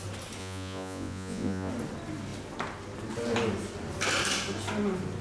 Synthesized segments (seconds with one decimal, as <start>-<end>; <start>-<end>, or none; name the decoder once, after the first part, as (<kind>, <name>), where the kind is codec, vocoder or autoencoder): 0.4-1.7 (vocoder, Vocos)